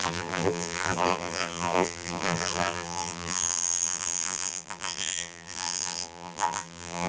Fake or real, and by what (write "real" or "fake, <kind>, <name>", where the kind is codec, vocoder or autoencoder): fake, vocoder, BigVGAN v2